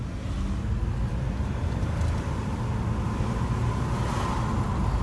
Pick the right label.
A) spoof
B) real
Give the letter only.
B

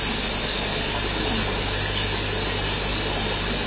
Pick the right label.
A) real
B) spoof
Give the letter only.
A